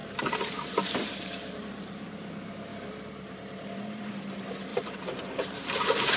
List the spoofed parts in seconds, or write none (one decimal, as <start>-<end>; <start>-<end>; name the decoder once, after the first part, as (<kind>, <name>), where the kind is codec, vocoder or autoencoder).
0.0-1.6 (vocoder, BigVGAN v2); 2.7-4.1; 4.7-6.2